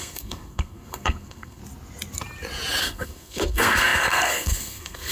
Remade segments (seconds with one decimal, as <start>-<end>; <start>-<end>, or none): 0.0-1.6; 2.8-5.1